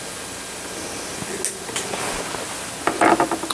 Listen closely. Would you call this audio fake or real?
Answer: real